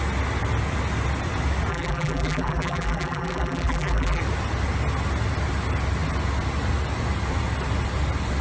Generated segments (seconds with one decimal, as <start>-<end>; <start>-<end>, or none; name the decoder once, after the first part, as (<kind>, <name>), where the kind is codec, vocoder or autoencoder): 1.7-4.2 (vocoder, BigVGAN v2)